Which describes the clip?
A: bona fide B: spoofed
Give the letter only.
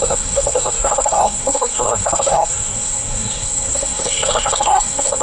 B